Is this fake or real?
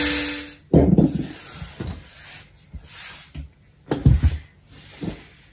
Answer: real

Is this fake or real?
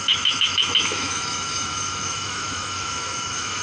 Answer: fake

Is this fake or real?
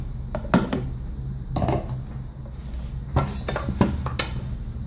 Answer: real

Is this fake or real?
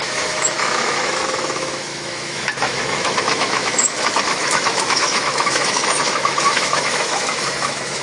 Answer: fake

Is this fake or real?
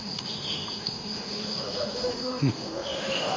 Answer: fake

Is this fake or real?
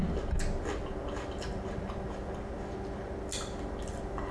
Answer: real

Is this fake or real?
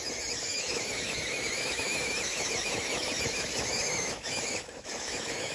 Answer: fake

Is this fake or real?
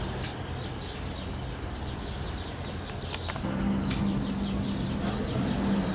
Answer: real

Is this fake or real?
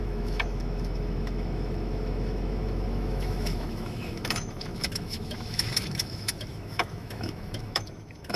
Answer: fake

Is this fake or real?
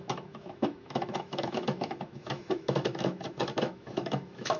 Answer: fake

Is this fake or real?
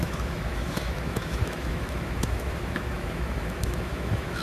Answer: fake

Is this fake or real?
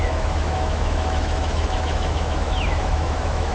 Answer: fake